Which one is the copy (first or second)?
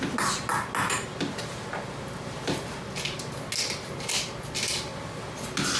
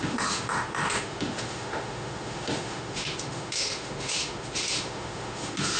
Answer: second